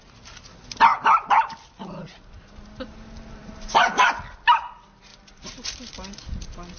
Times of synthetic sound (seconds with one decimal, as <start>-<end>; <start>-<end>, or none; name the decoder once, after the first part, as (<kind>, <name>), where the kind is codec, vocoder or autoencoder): 3.4-4.1 (vocoder, BigVGAN v2); 5.1-5.9